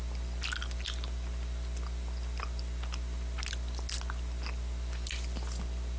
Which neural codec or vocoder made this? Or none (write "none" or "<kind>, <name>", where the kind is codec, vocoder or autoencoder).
none